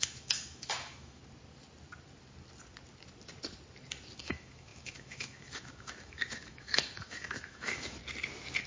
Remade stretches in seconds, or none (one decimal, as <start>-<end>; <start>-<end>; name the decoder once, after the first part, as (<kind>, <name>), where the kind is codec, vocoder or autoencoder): 0.0-1.2 (autoencoder, DAC-VAE); 4.2-8.0